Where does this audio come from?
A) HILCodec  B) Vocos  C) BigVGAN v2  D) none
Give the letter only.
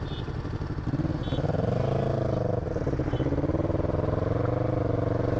D